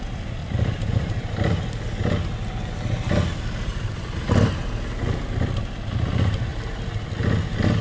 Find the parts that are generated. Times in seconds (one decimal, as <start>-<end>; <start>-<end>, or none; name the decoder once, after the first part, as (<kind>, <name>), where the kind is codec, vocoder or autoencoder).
0.4-1.8 (vocoder, BigVGAN v2); 3.7-4.5; 6.5-7.0